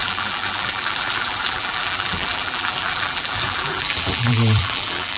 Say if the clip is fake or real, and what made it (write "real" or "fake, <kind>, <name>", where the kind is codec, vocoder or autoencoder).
fake, vocoder, BigVGAN v2